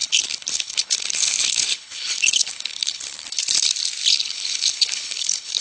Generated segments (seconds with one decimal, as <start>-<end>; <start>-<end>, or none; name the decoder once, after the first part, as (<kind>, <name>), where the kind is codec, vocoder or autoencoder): 0.0-3.4 (codec, HILCodec); 4.1-5.6